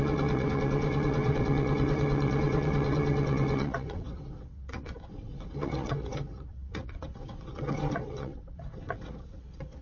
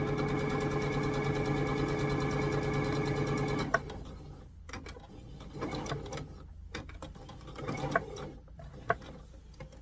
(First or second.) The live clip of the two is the second